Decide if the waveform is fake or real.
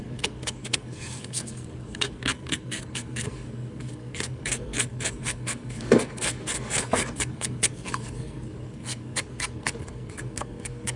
fake